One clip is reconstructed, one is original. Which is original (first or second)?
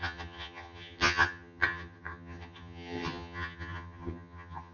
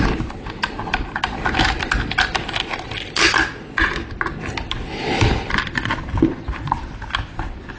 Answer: second